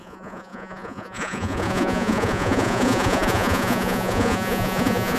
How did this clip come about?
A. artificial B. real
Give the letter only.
A